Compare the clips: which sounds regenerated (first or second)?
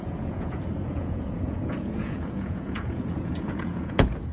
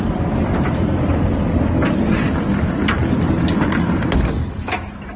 first